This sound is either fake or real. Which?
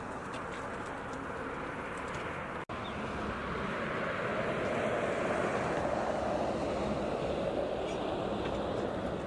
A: real